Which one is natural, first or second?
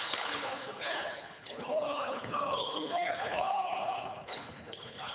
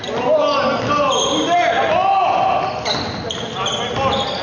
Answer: second